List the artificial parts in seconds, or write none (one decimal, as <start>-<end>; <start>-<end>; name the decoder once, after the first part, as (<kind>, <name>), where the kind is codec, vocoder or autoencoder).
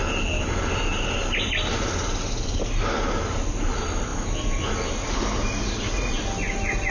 none